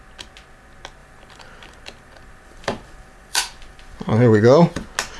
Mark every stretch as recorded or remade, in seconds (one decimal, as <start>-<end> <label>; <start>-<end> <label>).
0.0-1.0 recorded; 1.0-4.1 remade; 4.1-5.2 recorded